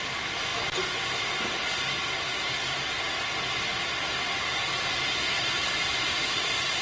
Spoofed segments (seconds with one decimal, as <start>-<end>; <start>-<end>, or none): none